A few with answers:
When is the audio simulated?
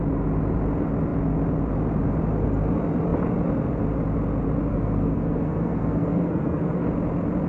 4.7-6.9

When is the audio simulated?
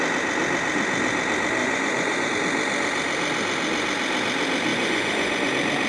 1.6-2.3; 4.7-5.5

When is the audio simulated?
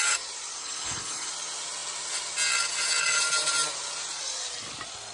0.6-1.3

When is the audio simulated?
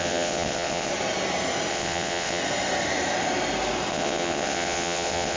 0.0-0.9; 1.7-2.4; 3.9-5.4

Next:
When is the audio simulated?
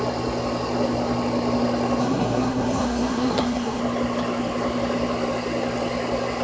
2.0-3.8